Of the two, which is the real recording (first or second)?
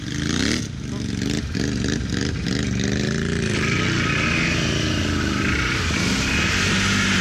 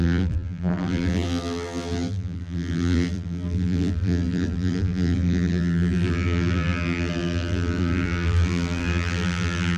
first